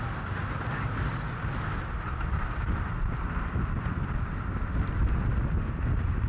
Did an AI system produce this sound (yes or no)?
no